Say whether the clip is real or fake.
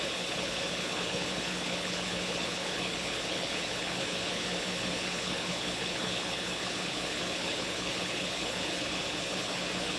fake